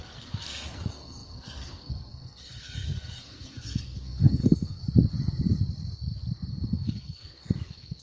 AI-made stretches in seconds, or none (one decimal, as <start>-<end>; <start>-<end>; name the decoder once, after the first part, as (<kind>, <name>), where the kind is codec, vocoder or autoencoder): 0.0-4.8 (codec, SNAC); 6.5-8.0